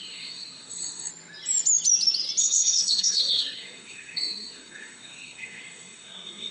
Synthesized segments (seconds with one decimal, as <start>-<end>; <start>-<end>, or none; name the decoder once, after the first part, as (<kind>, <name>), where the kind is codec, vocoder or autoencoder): 0.0-1.1 (codec, SNAC); 2.4-6.5